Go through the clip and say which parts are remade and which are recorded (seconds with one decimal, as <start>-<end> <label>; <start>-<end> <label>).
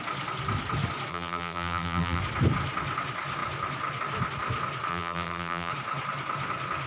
0.0-1.1 recorded; 1.1-2.2 remade; 2.2-4.9 recorded; 4.9-5.7 remade; 5.7-6.9 recorded